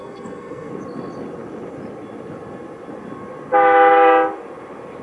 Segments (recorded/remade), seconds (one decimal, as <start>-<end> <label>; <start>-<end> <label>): 0.0-0.7 remade; 0.7-5.0 recorded